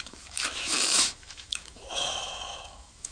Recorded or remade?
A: remade